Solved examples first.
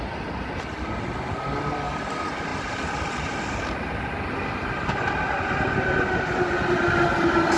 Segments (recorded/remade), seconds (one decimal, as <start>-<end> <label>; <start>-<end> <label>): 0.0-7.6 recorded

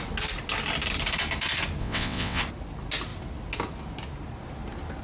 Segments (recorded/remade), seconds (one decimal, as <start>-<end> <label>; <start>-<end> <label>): 0.0-1.8 recorded; 1.8-2.4 remade; 2.4-5.0 recorded

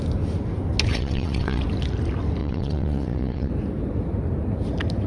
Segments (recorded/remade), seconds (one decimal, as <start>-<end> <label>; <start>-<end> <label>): 0.0-0.9 recorded; 0.9-1.6 remade; 1.6-2.4 recorded; 2.4-3.5 remade; 3.5-5.1 recorded

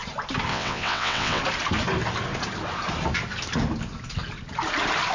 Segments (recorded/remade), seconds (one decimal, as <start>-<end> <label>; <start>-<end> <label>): 0.0-0.5 recorded; 0.5-1.4 remade; 1.4-5.1 recorded

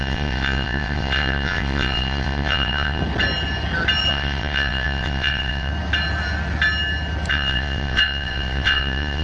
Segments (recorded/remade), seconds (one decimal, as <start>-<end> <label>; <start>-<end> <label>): 0.0-3.0 remade; 3.0-4.1 recorded; 4.1-5.7 remade; 5.7-7.3 recorded; 7.3-9.2 remade